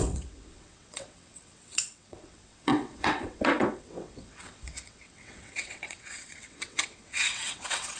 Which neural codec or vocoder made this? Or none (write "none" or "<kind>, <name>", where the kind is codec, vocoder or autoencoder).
vocoder, WaveNeXt